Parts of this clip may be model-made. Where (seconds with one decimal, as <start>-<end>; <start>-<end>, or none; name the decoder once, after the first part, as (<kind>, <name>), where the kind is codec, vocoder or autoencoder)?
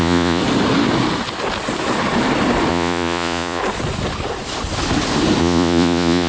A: 0.0-0.4 (vocoder, Vocos); 2.7-3.6; 5.4-6.3